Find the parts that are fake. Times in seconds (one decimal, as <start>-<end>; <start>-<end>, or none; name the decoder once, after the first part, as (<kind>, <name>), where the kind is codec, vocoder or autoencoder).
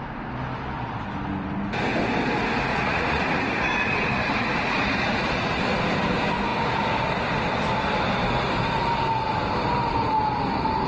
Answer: 2.7-5.6 (vocoder, Vocos)